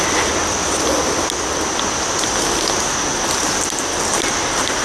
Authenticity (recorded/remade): recorded